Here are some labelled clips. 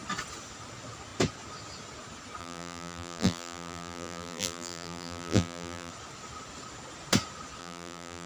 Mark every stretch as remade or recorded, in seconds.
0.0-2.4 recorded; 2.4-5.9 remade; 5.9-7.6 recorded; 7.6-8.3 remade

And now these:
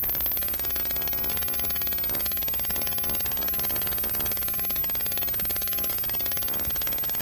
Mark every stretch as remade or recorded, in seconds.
0.0-7.2 recorded

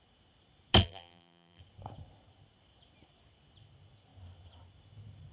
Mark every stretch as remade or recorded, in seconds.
0.0-0.8 recorded; 0.8-1.6 remade; 1.6-5.3 recorded